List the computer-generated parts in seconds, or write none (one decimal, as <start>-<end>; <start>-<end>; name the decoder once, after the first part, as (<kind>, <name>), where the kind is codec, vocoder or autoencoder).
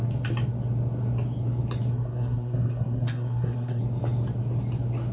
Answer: 1.9-3.8 (codec, SNAC)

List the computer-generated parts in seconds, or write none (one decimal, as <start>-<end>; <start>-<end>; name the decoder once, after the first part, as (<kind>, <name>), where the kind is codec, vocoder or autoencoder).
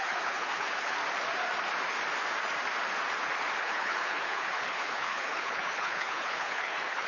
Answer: 0.0-1.0 (codec, HILCodec); 3.6-7.1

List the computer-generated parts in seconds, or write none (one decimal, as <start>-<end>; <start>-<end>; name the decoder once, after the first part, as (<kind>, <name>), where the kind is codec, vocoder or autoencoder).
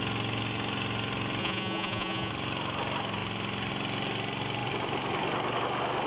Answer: 1.4-2.3 (vocoder, Vocos)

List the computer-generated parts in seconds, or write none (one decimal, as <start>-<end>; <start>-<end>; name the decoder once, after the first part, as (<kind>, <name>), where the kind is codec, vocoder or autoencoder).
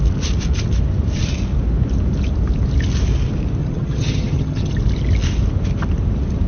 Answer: 3.6-4.7 (vocoder, HiFi-GAN)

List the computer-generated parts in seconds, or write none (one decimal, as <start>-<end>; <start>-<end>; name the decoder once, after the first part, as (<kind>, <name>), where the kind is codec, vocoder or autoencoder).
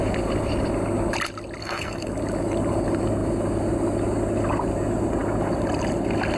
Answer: 1.6-2.1 (codec, SNAC)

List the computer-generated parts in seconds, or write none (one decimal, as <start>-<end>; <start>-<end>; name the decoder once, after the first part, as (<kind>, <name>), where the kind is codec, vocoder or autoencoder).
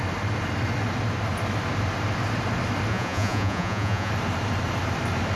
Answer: 2.9-4.1 (vocoder, Vocos)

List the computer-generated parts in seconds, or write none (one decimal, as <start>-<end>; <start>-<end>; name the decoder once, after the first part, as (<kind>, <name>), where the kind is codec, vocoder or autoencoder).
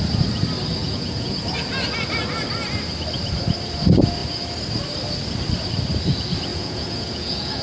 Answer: 0.8-1.3 (vocoder, Vocos); 6.5-7.6